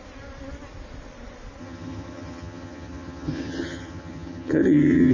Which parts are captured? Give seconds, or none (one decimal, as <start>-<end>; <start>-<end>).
0.0-1.6